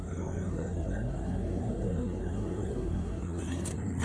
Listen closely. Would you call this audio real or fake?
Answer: fake